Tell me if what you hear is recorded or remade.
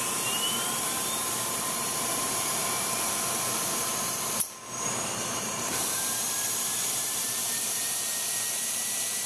remade